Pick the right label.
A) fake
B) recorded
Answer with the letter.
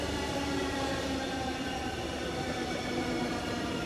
B